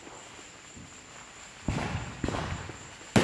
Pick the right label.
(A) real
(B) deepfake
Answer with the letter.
A